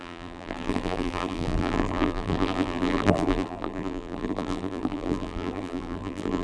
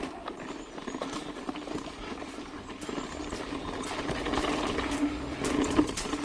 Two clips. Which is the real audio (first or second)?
second